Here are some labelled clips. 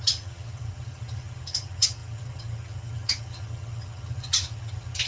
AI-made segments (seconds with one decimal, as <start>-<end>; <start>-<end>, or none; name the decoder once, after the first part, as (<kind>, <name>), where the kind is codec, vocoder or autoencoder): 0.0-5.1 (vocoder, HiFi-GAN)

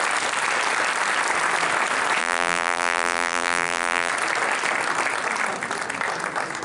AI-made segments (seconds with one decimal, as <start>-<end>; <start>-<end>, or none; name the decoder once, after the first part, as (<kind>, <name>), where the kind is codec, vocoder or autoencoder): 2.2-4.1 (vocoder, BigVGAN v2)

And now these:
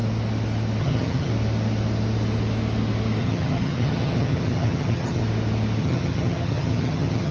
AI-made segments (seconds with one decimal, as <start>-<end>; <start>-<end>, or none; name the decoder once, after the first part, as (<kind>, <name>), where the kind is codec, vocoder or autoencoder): 0.8-1.3 (vocoder, HiFi-GAN); 3.2-5.2; 5.8-7.3

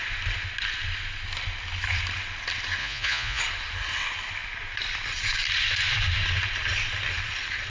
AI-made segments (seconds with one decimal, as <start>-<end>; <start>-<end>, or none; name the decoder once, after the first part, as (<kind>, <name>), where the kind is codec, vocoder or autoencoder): 2.8-3.4 (vocoder, Vocos)

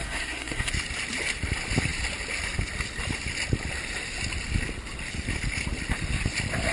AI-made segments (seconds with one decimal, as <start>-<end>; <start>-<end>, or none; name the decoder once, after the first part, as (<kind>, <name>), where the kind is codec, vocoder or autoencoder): 0.0-0.7 (codec, SNAC)

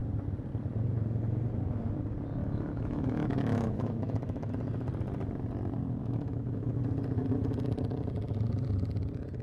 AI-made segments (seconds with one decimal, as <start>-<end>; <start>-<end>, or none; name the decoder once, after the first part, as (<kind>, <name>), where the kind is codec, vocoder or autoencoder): 2.4-4.5 (autoencoder, DAC-VAE); 6.0-6.8